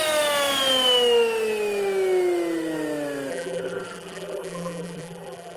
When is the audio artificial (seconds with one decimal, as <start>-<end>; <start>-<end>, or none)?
3.3-5.6